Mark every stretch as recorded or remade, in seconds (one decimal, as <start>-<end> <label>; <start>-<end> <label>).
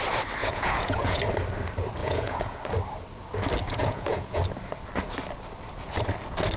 0.0-0.4 recorded; 0.4-1.2 remade; 1.2-2.0 recorded; 2.0-2.6 remade; 2.6-3.8 recorded; 3.8-4.4 remade; 4.4-6.6 recorded